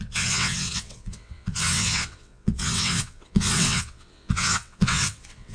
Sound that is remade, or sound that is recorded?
remade